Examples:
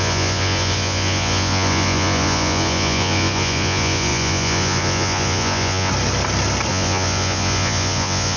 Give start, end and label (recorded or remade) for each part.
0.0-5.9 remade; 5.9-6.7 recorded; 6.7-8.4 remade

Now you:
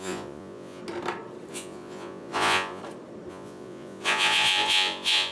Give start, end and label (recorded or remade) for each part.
0.0-0.8 remade; 0.8-1.5 recorded; 1.5-2.8 remade; 2.8-3.3 recorded; 3.3-5.3 remade

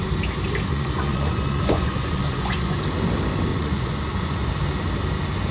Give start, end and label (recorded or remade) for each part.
0.0-0.7 recorded; 0.7-2.8 remade; 2.8-3.5 recorded; 3.5-4.5 remade; 4.5-5.5 recorded

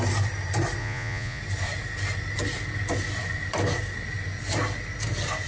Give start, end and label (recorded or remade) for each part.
0.0-0.8 recorded; 0.8-1.4 remade; 1.4-5.5 recorded

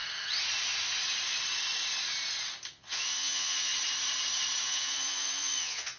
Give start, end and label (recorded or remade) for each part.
0.0-2.7 recorded; 2.7-3.7 remade; 3.7-4.6 recorded; 4.6-6.0 remade